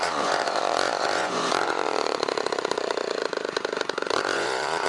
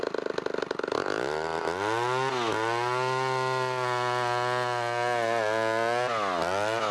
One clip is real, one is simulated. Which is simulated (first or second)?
first